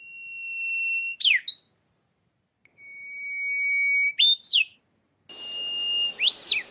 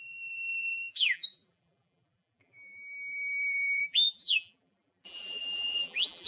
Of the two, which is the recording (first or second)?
first